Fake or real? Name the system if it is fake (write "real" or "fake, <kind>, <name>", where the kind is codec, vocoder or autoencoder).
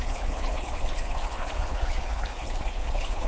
fake, codec, HILCodec